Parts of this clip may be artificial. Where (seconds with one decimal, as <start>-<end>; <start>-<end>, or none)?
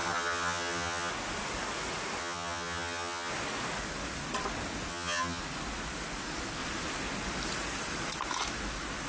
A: 0.0-1.1; 2.2-3.3; 4.9-5.4